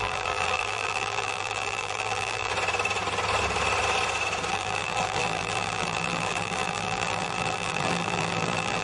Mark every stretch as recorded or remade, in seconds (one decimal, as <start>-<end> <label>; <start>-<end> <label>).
0.0-2.5 remade; 2.5-4.5 recorded; 4.5-8.8 remade